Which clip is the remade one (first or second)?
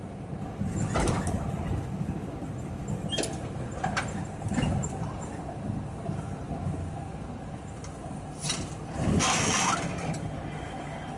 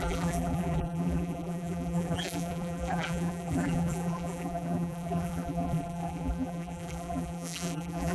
second